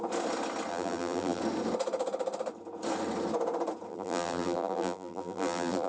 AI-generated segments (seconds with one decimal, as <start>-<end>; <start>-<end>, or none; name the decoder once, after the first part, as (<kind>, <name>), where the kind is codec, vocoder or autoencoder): 0.7-1.4 (vocoder, BigVGAN v2); 3.9-5.9